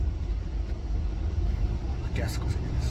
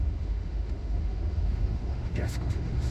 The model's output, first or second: second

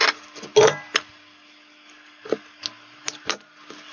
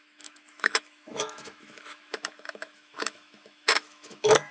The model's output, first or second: second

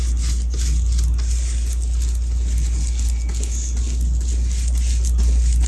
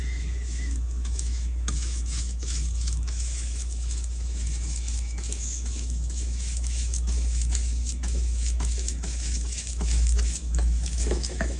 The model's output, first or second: second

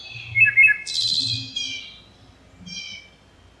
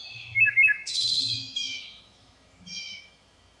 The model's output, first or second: second